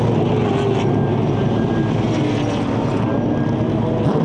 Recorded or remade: recorded